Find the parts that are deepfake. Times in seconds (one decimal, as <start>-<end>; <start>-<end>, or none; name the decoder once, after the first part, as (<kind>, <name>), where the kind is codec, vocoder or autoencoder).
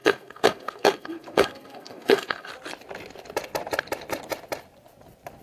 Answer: 0.0-2.5 (codec, SNAC)